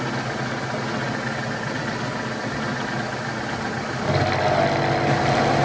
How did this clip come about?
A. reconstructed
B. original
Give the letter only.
B